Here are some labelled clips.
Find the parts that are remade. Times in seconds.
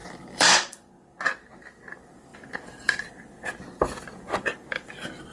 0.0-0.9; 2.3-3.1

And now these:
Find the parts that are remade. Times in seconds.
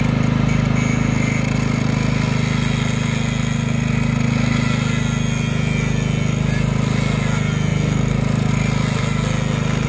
none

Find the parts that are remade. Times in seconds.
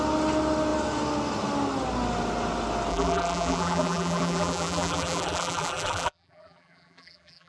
2.9-7.5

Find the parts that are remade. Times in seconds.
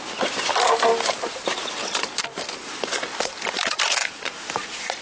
4.0-5.0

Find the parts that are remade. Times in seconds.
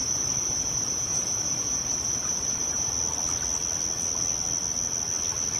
0.0-2.9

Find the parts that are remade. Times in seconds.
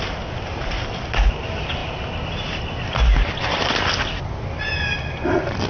none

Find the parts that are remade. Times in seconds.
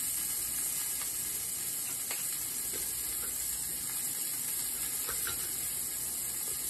none